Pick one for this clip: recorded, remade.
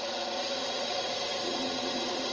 remade